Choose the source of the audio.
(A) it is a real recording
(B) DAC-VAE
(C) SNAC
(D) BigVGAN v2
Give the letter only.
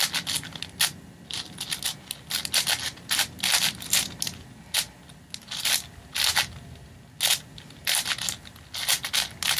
A